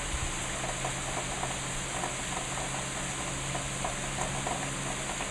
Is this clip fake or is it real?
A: real